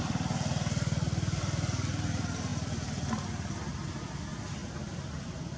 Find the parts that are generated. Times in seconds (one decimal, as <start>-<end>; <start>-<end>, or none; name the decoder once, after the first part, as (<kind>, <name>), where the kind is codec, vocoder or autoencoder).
2.5-3.8 (vocoder, BigVGAN v2)